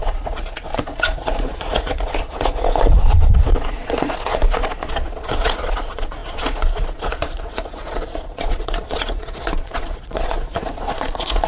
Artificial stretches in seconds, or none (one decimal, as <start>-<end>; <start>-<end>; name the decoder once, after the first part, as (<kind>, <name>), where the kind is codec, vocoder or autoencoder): 0.0-11.5 (vocoder, Vocos)